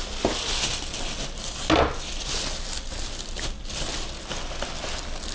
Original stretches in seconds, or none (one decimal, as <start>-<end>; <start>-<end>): 0.0-5.3